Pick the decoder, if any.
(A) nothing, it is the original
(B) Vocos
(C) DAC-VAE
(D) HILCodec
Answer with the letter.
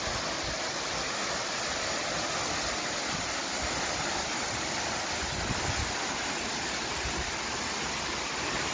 A